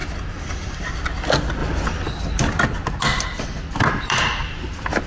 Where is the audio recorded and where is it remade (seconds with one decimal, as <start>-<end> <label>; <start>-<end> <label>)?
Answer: 0.0-0.8 remade; 0.8-5.1 recorded